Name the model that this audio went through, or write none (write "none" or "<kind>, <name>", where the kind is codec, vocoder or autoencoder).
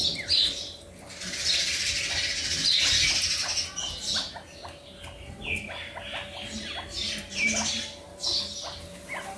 none